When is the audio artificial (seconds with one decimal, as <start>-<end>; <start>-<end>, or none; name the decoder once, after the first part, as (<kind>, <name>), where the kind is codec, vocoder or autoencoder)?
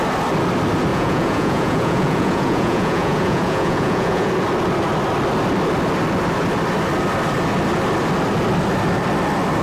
0.9-4.3 (vocoder, Vocos)